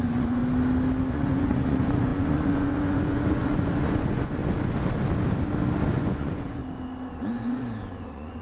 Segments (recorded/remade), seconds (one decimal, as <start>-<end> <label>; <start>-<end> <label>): 0.0-0.4 remade; 0.4-1.1 recorded; 1.1-4.4 remade; 4.4-5.9 recorded; 5.9-6.6 remade; 6.6-7.2 recorded; 7.2-8.4 remade